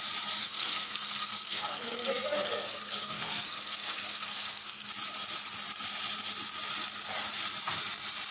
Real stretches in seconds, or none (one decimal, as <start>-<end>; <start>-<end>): 0.0-0.4; 4.9-8.3